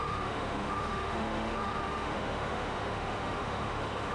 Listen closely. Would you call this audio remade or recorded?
remade